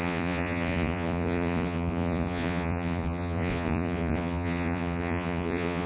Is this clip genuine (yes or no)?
no